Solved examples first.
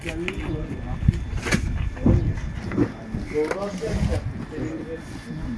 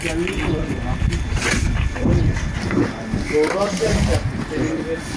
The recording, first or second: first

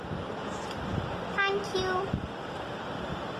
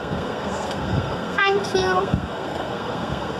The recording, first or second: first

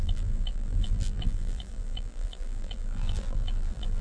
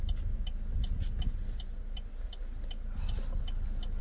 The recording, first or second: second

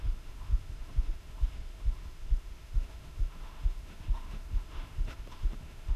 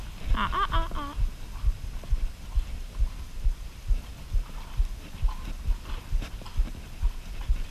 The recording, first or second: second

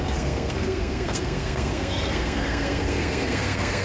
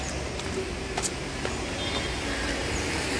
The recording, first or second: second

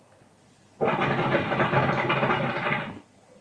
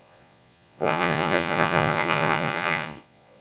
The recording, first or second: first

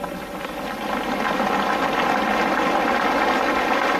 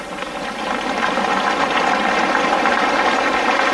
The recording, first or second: first